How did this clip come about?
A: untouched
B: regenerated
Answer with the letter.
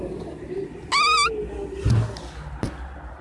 A